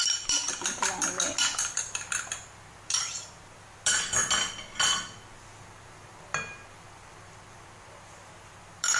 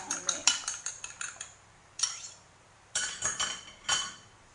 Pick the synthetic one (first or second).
second